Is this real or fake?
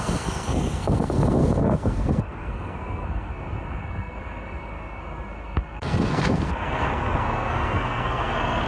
fake